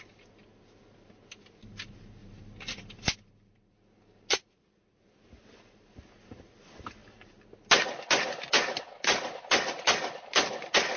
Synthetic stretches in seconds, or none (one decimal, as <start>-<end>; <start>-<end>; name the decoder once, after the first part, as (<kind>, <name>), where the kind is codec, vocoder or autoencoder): none